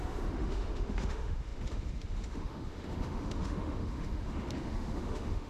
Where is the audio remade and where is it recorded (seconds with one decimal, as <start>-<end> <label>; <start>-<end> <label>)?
0.0-5.5 remade